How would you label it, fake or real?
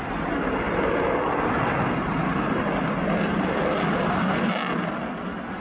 real